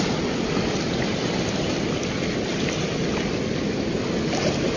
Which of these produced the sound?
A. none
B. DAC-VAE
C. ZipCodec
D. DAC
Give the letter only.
A